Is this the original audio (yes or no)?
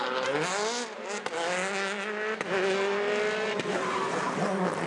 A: yes